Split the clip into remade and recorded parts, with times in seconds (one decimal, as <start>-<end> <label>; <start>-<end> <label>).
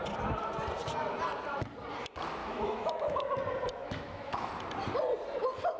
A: 0.0-2.4 recorded; 2.4-3.3 remade; 3.3-3.8 recorded; 3.8-4.5 remade; 4.5-5.8 recorded